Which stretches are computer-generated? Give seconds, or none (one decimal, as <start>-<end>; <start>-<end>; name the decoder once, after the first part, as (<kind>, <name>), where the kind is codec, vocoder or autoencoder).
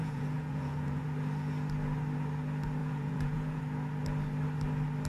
0.0-1.0 (vocoder, Vocos); 2.8-3.6